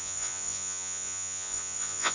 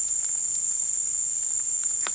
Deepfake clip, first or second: first